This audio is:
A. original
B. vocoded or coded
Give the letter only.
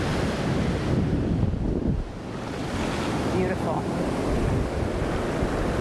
A